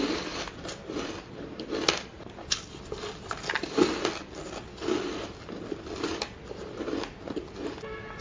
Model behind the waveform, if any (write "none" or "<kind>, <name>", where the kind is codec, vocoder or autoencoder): none